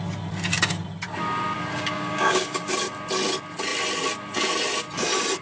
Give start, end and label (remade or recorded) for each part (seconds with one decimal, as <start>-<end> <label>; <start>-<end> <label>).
0.0-1.7 recorded; 1.7-2.7 remade; 2.7-5.4 recorded